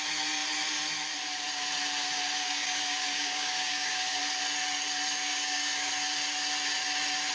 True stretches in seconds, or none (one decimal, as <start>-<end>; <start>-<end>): 0.0-2.4; 4.2-5.3; 5.9-7.3